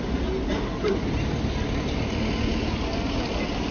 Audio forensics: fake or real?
real